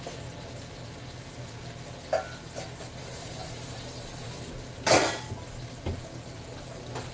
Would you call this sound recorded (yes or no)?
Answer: yes